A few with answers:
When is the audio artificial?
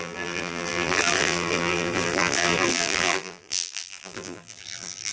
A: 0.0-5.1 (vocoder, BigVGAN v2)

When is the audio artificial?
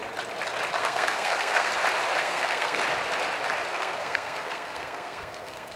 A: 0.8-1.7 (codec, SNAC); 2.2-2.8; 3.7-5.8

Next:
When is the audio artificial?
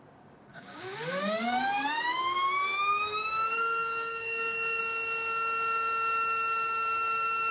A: 0.5-4.8 (codec, DAC)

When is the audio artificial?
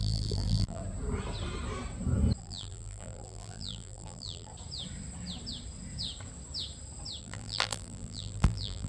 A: 0.0-0.8 (vocoder, BigVGAN v2); 2.4-4.5; 7.2-8.9